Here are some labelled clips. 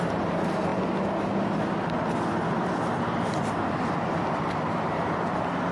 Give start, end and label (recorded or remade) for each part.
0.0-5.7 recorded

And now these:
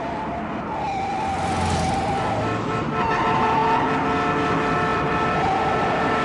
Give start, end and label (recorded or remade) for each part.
0.0-4.9 recorded; 4.9-6.2 remade

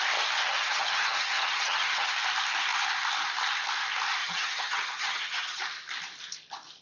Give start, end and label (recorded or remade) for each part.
0.0-0.4 recorded; 0.4-2.1 remade; 2.1-4.2 recorded; 4.2-5.6 remade; 5.6-6.8 recorded

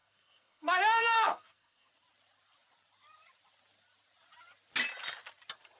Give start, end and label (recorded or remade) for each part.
0.0-1.9 remade; 1.9-5.8 recorded

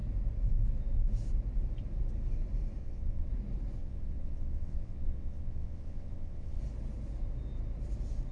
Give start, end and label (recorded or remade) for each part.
0.0-2.8 recorded; 2.8-3.3 remade; 3.3-3.8 recorded; 3.8-6.6 remade; 6.6-8.3 recorded

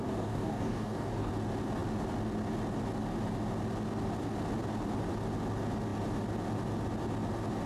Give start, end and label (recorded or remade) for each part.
0.0-1.3 remade; 1.3-7.7 recorded

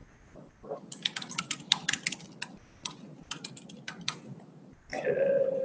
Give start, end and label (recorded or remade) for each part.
0.0-1.4 recorded; 1.4-1.8 remade; 1.8-3.2 recorded; 3.2-4.9 remade; 4.9-5.6 recorded